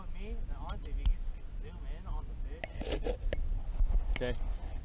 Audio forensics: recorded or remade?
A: recorded